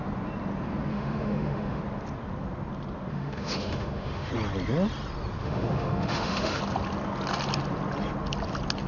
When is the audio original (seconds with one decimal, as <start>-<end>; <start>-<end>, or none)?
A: 0.0-0.9; 1.8-3.1; 4.3-5.4; 6.6-8.9